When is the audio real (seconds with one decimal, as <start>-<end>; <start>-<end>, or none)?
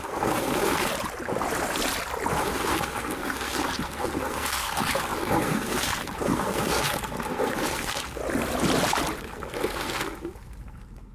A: 0.9-2.4; 8.2-9.2